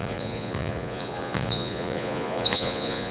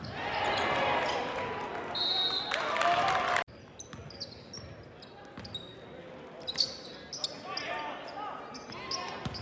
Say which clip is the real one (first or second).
second